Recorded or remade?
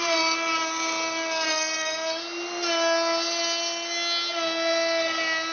recorded